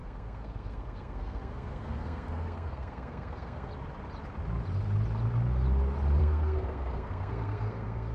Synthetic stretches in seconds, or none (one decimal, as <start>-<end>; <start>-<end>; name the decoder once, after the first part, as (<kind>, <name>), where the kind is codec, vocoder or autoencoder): 0.0-3.7 (codec, SNAC); 6.2-8.1